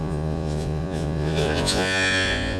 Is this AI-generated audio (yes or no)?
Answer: yes